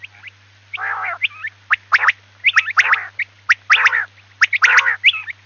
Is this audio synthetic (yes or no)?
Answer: no